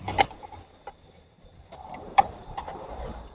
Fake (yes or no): yes